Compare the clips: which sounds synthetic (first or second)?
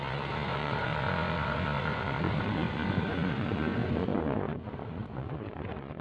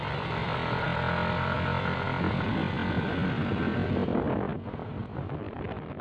first